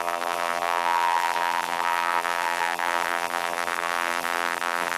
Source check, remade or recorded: remade